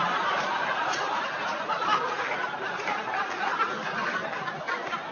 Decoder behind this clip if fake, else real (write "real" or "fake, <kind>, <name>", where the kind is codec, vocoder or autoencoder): real